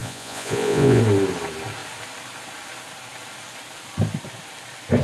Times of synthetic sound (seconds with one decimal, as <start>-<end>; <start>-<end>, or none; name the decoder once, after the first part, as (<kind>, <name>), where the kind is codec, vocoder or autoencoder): 0.0-1.0 (vocoder, Vocos)